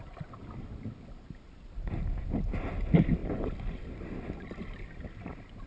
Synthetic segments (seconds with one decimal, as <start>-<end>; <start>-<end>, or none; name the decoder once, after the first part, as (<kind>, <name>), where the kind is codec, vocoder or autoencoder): none

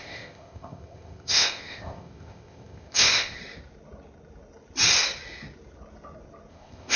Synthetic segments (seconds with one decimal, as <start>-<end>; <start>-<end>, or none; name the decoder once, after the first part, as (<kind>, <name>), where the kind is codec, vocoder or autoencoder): 0.0-3.4 (codec, ZipCodec); 6.5-7.0